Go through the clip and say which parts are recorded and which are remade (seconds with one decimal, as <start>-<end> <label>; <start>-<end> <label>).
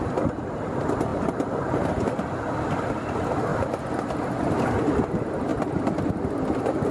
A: 0.0-6.9 recorded